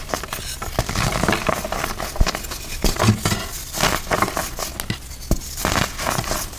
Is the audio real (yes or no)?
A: yes